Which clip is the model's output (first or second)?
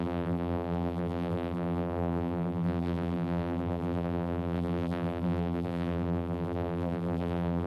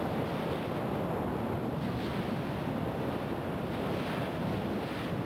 first